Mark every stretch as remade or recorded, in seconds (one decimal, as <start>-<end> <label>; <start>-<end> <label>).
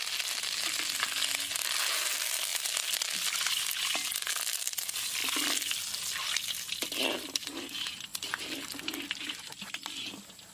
0.0-10.5 recorded